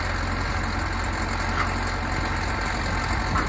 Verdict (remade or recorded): recorded